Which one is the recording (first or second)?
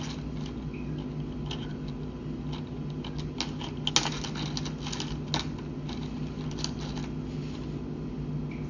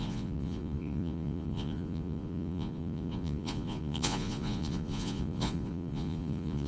first